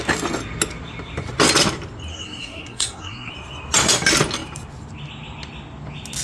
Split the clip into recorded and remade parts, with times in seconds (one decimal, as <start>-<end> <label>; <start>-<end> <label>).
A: 0.0-2.1 recorded; 2.1-3.3 remade; 3.3-6.2 recorded